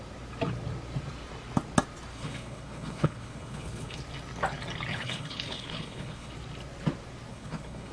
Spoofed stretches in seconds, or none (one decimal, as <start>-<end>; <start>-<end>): 2.1-4.0; 4.9-6.3; 7.3-7.9